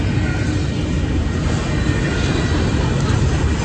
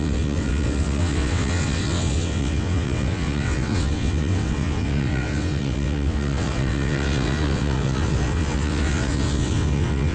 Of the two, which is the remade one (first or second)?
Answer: second